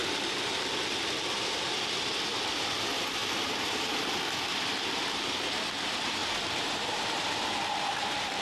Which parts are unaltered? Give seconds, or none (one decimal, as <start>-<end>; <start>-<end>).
2.3-6.2